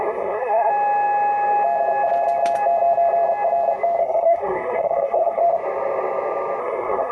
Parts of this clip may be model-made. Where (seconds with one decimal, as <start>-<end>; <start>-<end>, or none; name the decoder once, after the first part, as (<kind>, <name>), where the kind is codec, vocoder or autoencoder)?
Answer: 0.0-0.7 (codec, SNAC); 4.0-5.4; 6.6-7.1

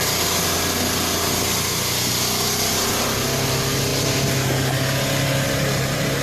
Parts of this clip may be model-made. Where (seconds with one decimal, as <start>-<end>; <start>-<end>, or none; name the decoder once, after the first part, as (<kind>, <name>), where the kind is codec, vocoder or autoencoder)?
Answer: none

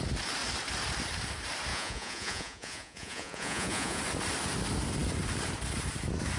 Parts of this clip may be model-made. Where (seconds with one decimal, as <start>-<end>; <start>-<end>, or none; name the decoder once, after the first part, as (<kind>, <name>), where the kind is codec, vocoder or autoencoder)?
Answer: 1.7-4.0 (vocoder, Vocos)

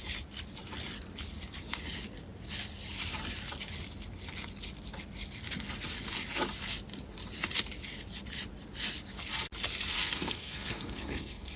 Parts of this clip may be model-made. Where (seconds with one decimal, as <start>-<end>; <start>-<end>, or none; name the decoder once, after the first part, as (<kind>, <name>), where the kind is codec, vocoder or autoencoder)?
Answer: 9.9-11.6 (codec, SNAC)